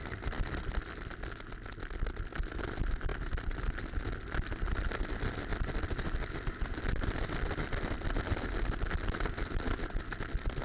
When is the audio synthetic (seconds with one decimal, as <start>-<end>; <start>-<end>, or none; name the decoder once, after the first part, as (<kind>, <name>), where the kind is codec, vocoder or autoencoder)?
none